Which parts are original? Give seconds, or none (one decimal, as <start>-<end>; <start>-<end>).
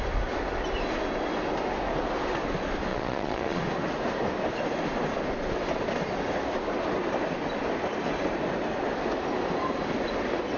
0.0-2.9; 3.6-10.6